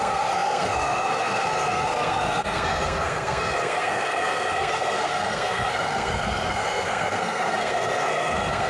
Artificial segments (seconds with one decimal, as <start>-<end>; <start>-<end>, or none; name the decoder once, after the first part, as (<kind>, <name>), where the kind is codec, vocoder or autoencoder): 0.0-8.7 (codec, SNAC)